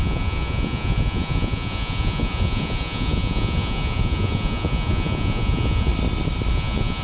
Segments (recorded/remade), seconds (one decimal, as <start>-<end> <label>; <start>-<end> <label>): 0.0-5.9 remade; 5.9-6.5 recorded; 6.5-7.0 remade